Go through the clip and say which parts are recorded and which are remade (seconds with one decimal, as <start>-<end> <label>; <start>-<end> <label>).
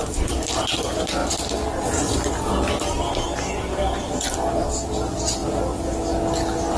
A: 0.0-6.8 recorded